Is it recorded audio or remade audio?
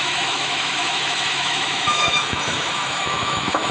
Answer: remade